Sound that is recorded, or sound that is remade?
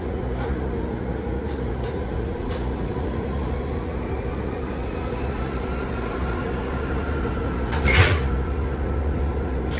remade